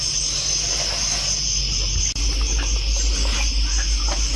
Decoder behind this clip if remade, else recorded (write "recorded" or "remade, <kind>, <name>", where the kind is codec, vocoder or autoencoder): recorded